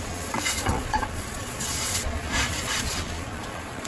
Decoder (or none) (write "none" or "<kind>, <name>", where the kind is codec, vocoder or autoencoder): vocoder, Vocos